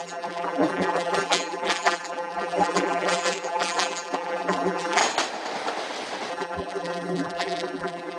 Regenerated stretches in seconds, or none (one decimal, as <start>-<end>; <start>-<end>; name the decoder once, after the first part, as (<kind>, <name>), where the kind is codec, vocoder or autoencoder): 0.0-5.0 (vocoder, BigVGAN v2); 6.3-8.2